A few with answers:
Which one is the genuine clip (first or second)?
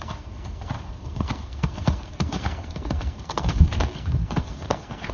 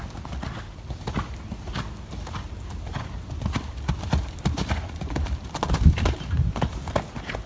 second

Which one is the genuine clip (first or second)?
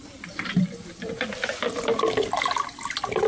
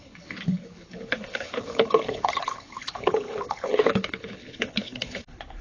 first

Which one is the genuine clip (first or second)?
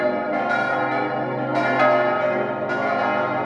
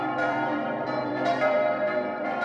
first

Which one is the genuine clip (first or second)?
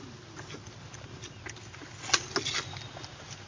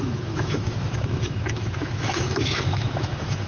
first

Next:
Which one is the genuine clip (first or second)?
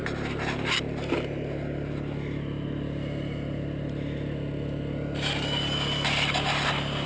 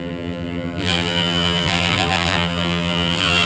first